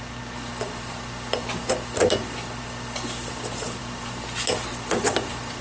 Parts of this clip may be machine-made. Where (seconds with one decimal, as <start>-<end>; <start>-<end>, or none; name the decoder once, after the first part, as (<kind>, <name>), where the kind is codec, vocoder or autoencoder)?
none